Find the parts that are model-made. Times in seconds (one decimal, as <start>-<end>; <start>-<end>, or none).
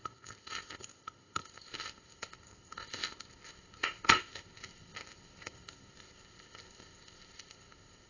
0.0-8.1